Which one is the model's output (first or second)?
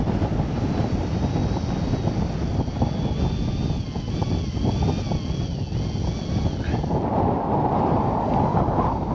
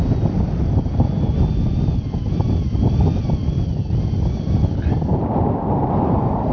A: second